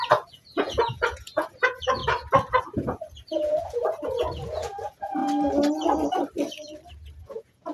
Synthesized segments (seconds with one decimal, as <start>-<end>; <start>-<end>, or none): 0.0-2.0; 2.6-5.2; 7.2-7.7